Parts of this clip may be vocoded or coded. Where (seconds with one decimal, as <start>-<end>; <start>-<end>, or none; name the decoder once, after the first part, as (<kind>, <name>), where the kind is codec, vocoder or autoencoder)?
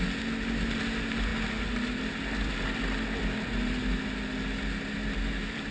none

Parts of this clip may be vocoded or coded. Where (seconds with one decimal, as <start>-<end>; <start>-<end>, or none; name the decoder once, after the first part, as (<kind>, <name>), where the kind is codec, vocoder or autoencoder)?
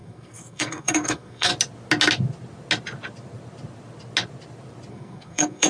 0.0-1.5 (codec, SNAC); 4.9-5.7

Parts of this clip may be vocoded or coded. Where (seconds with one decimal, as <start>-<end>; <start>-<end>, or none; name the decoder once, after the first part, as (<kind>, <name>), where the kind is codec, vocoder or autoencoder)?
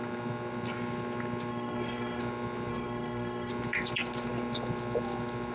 1.5-2.2 (codec, SNAC); 2.7-3.5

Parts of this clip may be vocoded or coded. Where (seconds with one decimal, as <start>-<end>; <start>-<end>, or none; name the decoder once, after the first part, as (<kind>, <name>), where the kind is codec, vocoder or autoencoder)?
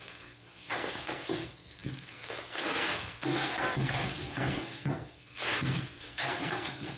0.0-7.0 (codec, SNAC)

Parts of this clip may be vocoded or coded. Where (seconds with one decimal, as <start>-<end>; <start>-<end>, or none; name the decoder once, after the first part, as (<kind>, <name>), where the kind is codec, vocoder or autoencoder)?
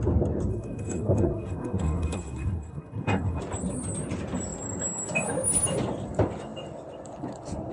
0.5-3.4 (codec, SNAC)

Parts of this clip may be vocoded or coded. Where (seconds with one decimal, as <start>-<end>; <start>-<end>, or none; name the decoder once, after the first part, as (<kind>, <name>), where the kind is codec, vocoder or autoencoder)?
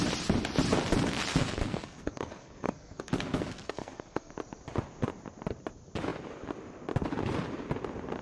1.3-4.3 (codec, SNAC)